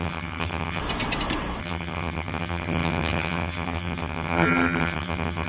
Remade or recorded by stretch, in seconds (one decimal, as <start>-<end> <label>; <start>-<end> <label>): 0.0-0.8 remade; 0.8-1.6 recorded; 1.6-5.5 remade

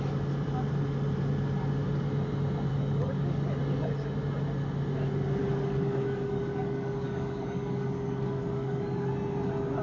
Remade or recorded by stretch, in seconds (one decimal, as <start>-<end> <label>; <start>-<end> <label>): 0.0-2.7 recorded; 2.7-3.6 remade; 3.6-5.4 recorded; 5.4-9.1 remade; 9.1-9.8 recorded

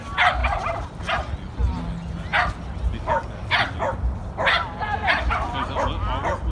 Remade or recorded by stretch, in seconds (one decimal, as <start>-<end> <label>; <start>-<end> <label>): 0.0-6.5 recorded

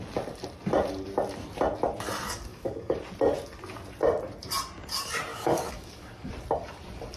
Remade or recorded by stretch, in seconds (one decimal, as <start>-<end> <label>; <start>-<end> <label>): 0.0-2.5 recorded; 2.5-3.0 remade; 3.0-5.3 recorded; 5.3-6.3 remade; 6.3-7.2 recorded